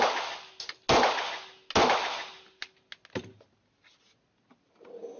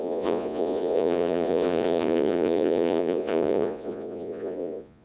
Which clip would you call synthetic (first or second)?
second